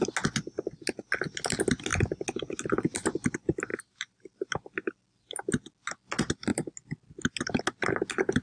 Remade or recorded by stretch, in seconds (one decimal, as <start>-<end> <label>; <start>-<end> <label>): 0.0-3.7 recorded; 3.7-4.2 remade; 4.2-8.4 recorded